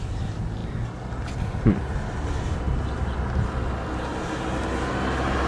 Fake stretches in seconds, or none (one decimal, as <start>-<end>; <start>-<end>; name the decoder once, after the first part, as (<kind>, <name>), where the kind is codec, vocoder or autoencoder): none